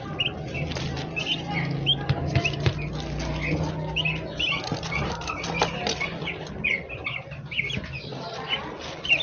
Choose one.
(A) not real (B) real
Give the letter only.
B